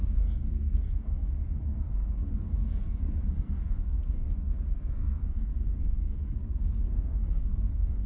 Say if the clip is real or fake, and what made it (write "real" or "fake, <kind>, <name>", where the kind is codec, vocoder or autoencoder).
fake, codec, SNAC